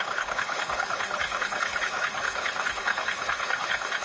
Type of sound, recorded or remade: remade